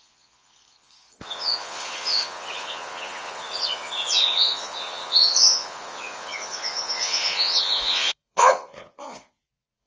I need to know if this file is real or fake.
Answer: fake